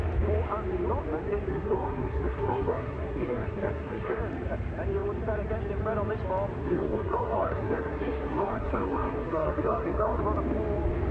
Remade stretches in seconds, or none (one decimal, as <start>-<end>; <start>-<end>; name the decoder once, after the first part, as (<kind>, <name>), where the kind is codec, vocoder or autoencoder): 1.5-4.2 (codec, SNAC); 6.6-10.2